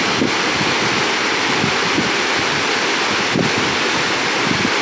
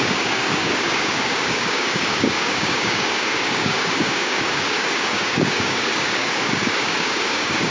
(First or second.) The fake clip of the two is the second